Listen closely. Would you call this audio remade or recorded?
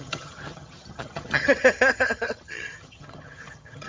remade